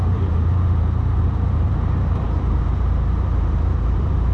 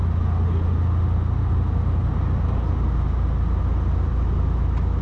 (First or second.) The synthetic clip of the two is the first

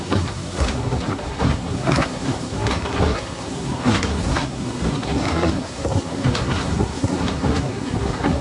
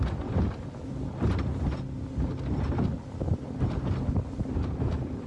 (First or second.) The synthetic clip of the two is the first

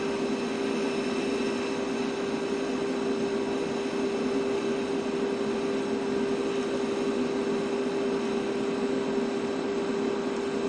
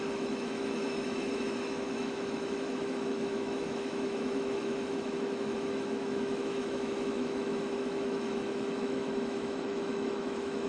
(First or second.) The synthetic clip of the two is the second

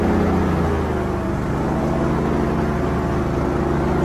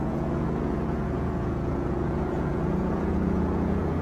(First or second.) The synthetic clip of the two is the second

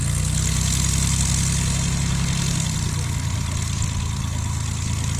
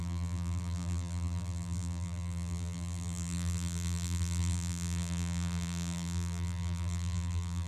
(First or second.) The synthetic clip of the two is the second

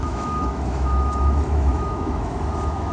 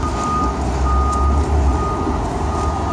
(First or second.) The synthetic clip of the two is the first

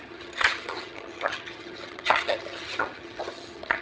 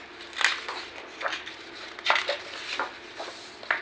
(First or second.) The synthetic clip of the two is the first